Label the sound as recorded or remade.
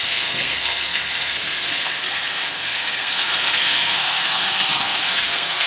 remade